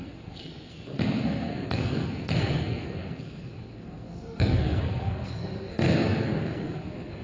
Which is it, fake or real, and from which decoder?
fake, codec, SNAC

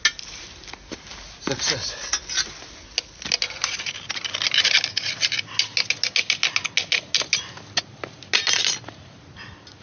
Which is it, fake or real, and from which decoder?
real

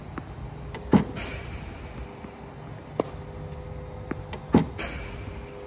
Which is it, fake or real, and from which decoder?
real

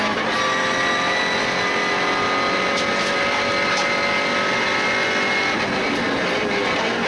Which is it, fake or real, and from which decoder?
real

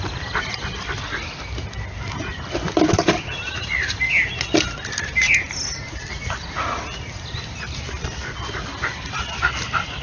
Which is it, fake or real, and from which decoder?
real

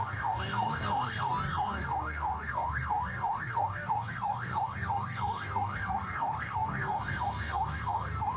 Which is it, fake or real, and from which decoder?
fake, codec, DAC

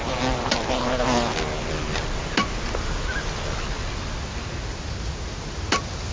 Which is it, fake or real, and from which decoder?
real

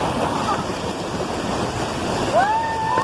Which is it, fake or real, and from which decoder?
real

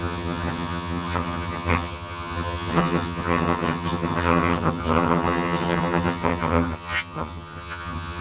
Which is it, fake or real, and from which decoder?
fake, vocoder, HiFi-GAN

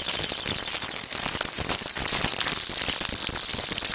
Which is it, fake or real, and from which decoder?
real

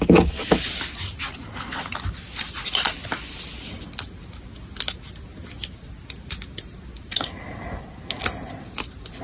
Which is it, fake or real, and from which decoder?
real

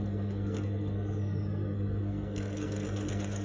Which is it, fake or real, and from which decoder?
fake, codec, SNAC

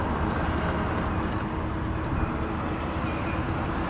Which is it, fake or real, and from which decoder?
real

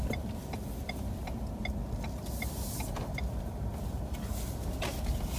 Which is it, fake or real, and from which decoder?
real